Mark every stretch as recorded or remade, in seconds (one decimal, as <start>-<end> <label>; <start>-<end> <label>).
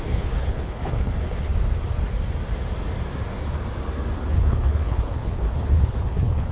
0.0-1.5 remade; 1.5-4.3 recorded; 4.3-6.5 remade